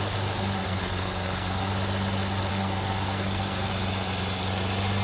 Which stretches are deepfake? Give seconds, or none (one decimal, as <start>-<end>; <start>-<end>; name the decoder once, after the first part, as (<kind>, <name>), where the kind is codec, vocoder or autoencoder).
0.6-1.7 (codec, SNAC); 2.5-3.7